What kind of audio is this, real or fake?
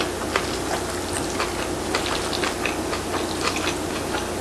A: real